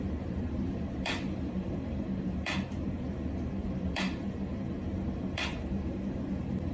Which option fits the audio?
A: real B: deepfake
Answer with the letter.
B